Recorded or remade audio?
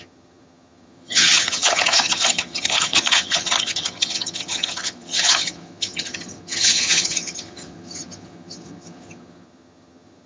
remade